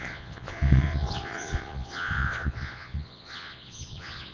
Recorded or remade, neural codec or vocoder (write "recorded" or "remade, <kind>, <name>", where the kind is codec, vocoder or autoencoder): remade, vocoder, Vocos